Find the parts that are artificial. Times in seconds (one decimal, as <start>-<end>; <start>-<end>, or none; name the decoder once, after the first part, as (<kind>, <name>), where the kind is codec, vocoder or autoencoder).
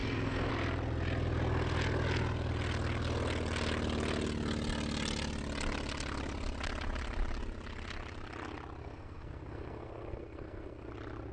0.0-0.5 (codec, SNAC); 8.8-10.9